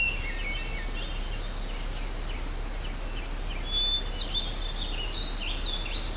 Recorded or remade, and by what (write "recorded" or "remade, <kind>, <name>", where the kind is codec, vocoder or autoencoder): recorded